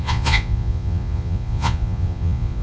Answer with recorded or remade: remade